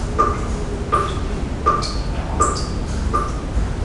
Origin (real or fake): real